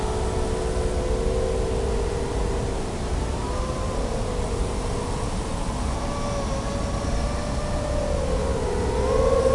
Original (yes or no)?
yes